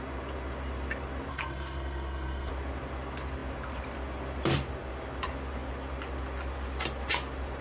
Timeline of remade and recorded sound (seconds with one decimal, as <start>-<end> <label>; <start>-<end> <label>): 0.0-1.3 recorded; 1.3-2.5 remade; 2.5-7.6 recorded